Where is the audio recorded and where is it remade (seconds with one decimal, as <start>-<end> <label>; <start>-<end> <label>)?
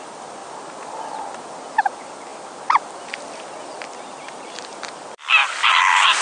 0.0-6.2 recorded